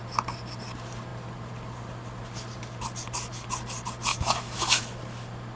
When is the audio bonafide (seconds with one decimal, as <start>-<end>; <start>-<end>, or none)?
0.0-4.1; 4.8-5.6